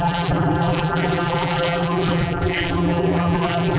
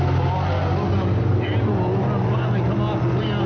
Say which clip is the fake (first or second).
first